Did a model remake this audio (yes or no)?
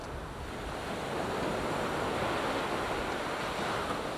no